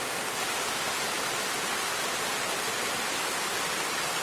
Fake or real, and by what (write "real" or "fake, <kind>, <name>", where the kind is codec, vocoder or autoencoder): real